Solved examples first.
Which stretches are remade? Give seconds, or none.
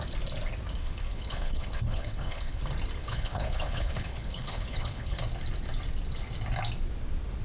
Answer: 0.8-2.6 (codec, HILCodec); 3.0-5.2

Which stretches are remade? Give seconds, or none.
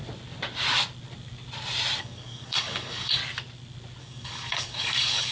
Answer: 2.0-3.2 (codec, DAC); 4.0-5.3